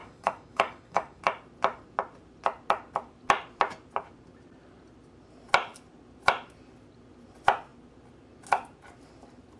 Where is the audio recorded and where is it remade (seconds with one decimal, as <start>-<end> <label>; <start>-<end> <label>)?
0.0-1.2 remade; 1.2-9.6 recorded